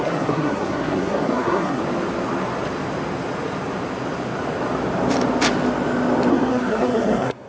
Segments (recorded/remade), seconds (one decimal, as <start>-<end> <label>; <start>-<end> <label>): 0.0-1.8 remade; 1.8-6.3 recorded; 6.3-7.5 remade